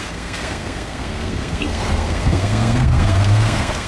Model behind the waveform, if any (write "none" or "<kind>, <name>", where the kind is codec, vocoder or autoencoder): codec, SNAC